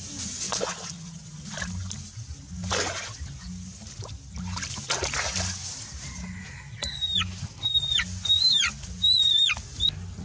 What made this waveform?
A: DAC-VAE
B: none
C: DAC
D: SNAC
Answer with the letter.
B